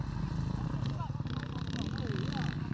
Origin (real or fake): real